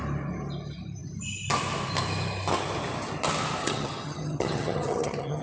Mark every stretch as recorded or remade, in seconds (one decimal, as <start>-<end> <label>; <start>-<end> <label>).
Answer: 0.0-3.6 recorded; 3.6-5.4 remade